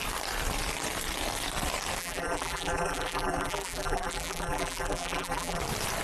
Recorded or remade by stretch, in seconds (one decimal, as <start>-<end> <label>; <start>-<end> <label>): 0.0-2.0 recorded; 2.0-5.6 remade; 5.6-6.0 recorded